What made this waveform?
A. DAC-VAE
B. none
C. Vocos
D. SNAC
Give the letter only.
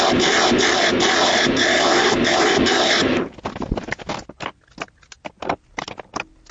B